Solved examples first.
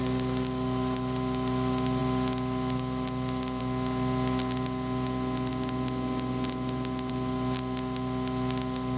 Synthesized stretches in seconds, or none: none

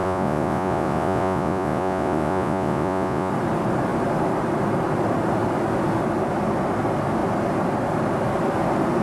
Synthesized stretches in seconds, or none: 0.0-3.3 (vocoder, Vocos)